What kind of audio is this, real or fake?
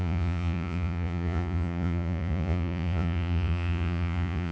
fake